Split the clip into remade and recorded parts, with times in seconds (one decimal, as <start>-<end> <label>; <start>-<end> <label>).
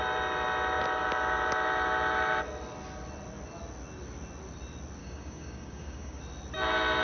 0.0-5.0 recorded; 5.0-6.2 remade; 6.2-7.0 recorded